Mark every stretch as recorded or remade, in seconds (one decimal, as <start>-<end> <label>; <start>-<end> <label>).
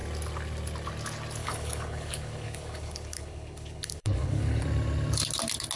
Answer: 0.0-1.4 recorded; 1.4-4.6 remade; 4.6-5.8 recorded